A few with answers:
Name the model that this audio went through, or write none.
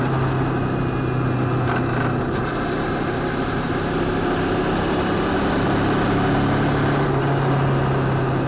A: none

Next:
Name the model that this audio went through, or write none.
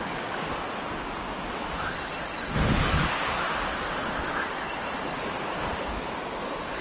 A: none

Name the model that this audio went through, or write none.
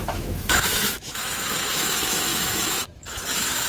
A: autoencoder, DAC-VAE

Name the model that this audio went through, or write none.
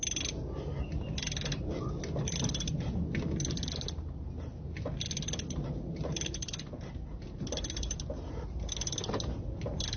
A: none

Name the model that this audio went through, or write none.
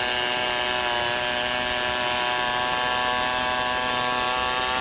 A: none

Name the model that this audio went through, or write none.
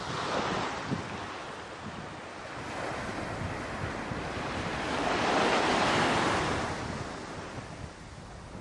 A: none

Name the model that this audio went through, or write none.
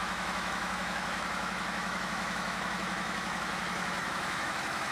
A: autoencoder, DAC-VAE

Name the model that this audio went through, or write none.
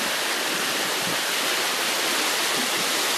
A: none